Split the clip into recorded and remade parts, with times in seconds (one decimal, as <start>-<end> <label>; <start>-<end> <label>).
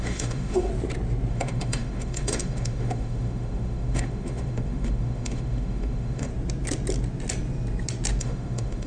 0.0-0.7 remade; 0.7-1.3 recorded; 1.3-6.3 remade; 6.3-8.2 recorded; 8.2-8.9 remade